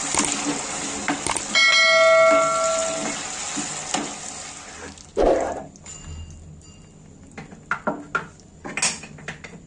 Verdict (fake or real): real